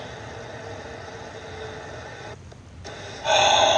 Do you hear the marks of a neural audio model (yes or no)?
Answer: no